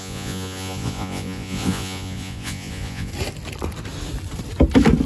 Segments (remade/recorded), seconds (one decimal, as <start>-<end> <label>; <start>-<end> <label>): 0.0-3.1 remade; 3.1-5.1 recorded